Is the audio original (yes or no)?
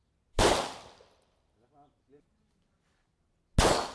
yes